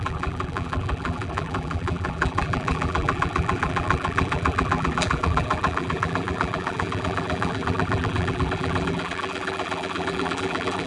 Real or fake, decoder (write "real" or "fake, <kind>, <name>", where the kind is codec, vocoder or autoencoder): fake, vocoder, BigVGAN v2